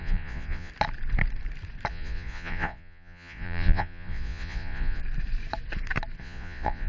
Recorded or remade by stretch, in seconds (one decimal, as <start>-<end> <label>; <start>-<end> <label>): 0.0-0.7 remade; 0.7-1.9 recorded; 1.9-5.0 remade; 5.0-6.2 recorded; 6.2-6.9 remade

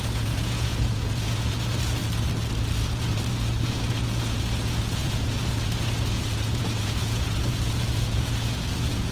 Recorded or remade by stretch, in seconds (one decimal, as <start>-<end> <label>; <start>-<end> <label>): 0.0-2.0 remade; 2.0-2.8 recorded; 2.8-9.1 remade

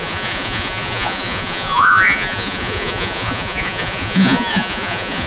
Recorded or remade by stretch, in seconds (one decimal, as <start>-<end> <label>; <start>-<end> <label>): 0.0-5.3 remade

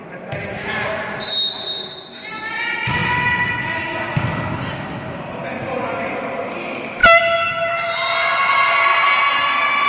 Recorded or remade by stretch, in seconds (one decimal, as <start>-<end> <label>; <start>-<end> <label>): 0.0-9.9 recorded

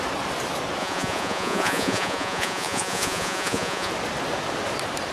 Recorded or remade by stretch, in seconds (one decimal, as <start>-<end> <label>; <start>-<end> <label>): 0.0-0.8 recorded; 0.8-3.9 remade; 3.9-5.1 recorded

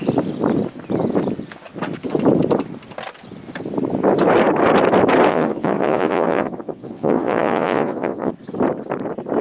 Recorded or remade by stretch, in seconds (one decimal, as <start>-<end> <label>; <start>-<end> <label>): 0.0-5.3 recorded; 5.3-8.3 remade; 8.3-9.4 recorded

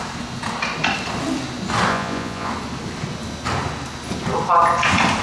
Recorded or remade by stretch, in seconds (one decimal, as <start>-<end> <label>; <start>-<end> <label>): 0.0-1.9 recorded; 1.9-2.5 remade; 2.5-5.2 recorded